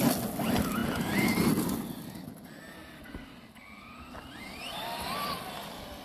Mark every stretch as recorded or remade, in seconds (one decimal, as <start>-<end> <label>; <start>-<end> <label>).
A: 0.0-6.0 recorded